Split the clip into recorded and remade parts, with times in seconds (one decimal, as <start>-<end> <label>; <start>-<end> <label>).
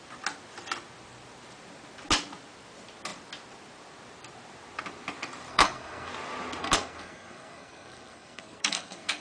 0.0-5.5 recorded; 5.5-6.1 remade; 6.1-6.6 recorded; 6.6-9.2 remade